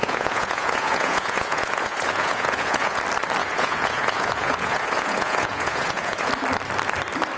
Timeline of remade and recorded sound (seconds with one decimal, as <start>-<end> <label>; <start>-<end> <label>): 0.0-3.0 remade; 3.0-3.4 recorded; 3.4-6.3 remade; 6.3-7.4 recorded